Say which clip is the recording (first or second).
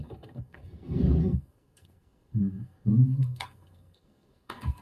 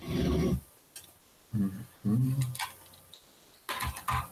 second